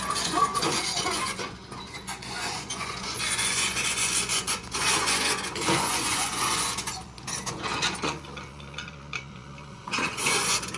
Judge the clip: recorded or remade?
remade